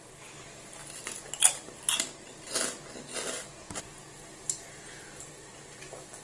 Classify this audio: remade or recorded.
recorded